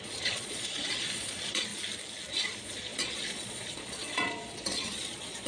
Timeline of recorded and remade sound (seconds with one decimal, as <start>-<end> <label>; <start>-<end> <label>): 0.0-1.7 remade; 1.7-2.3 recorded; 2.3-5.5 remade